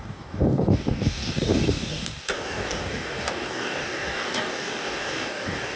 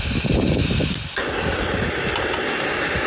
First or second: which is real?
second